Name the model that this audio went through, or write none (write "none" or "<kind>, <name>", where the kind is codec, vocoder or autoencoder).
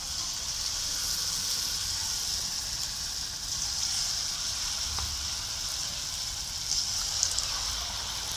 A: none